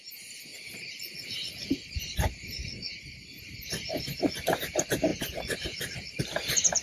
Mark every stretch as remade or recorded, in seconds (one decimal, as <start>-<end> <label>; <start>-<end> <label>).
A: 0.0-0.5 remade; 0.5-1.9 recorded; 1.9-2.6 remade; 2.6-3.2 recorded; 3.2-5.1 remade; 5.1-6.2 recorded; 6.2-6.8 remade